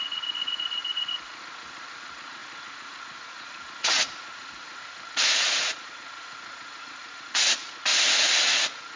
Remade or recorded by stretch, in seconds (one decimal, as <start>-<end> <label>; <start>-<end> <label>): 0.0-7.9 remade; 7.9-8.4 recorded; 8.4-9.0 remade